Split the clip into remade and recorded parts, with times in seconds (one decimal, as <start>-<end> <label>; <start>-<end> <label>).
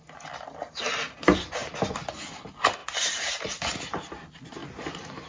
0.0-4.6 recorded; 4.6-5.3 remade